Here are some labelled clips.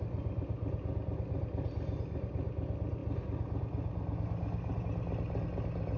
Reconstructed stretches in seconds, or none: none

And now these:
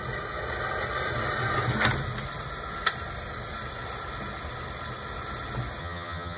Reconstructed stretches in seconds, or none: 5.8-6.4

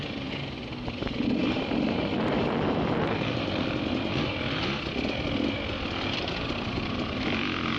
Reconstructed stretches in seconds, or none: none